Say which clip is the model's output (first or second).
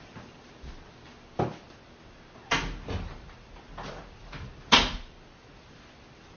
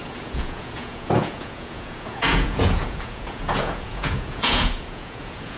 second